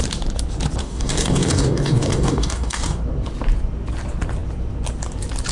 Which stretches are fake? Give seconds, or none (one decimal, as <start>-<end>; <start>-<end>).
0.8-3.0